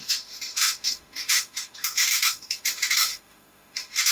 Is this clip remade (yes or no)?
yes